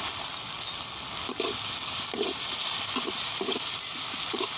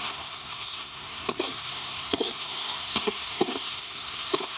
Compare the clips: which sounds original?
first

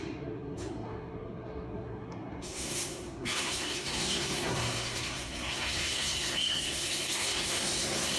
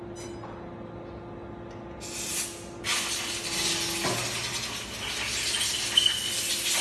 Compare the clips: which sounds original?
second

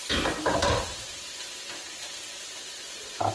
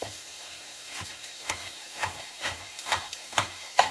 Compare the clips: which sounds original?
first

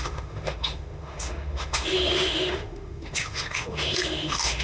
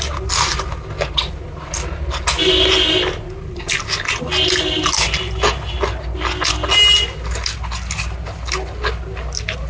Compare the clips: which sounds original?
second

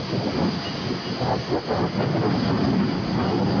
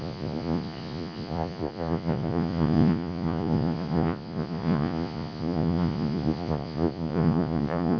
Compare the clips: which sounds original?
first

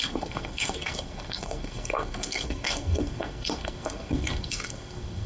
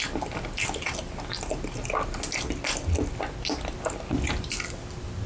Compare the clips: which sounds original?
second